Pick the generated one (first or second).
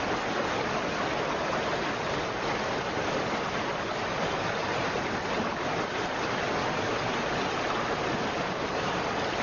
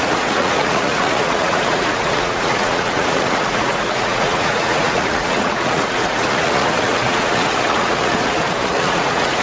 second